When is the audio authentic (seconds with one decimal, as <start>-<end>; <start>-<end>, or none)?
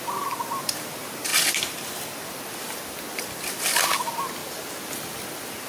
0.0-5.7